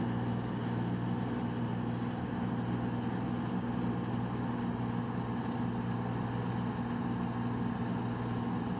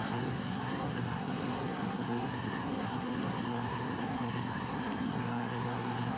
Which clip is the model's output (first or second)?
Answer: second